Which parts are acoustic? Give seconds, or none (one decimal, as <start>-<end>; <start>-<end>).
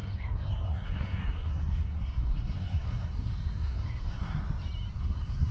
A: 4.4-5.0